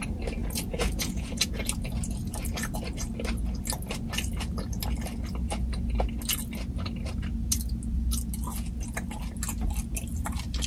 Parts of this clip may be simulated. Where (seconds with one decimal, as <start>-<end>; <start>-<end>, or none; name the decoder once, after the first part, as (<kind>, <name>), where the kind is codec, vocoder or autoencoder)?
0.4-1.5 (vocoder, Vocos)